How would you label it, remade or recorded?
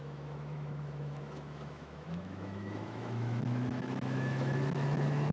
remade